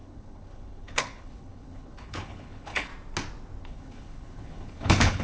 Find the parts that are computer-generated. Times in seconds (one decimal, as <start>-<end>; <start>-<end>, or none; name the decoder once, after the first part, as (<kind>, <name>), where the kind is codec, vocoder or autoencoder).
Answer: 0.0-2.9 (codec, HILCodec); 3.6-5.2